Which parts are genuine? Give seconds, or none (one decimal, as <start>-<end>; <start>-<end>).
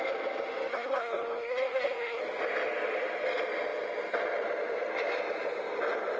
0.0-0.7; 2.2-6.2